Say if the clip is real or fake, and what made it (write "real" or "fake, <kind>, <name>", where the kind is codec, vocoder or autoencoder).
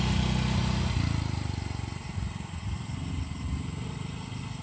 real